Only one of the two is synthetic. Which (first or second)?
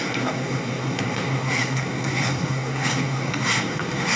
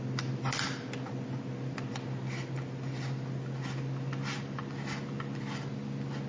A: first